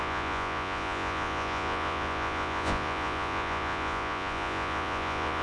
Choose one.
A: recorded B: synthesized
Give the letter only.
B